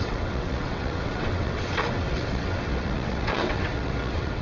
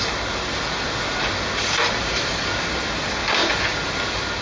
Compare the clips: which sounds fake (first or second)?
first